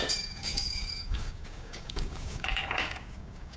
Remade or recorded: remade